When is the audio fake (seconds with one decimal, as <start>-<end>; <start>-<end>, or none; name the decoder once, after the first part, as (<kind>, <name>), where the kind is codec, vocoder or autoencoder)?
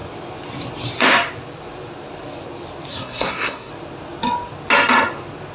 2.9-3.7 (codec, SNAC)